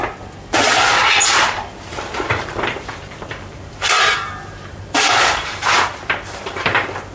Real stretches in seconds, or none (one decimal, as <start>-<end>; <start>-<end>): 0.0-1.2